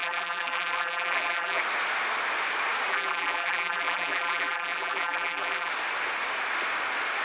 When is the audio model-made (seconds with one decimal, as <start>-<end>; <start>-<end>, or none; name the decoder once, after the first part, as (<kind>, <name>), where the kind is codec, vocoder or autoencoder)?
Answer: 0.0-1.6 (vocoder, BigVGAN v2); 2.9-5.7